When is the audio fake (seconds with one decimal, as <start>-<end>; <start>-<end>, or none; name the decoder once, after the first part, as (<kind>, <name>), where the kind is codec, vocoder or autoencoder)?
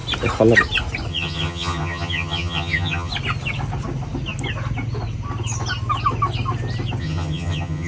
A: 1.1-3.1 (vocoder, HiFi-GAN); 7.0-7.9